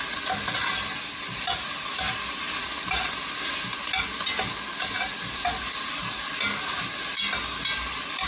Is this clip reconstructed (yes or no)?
no